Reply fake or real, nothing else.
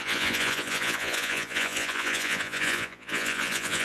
fake